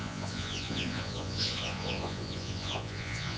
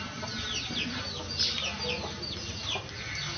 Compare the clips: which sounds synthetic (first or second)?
first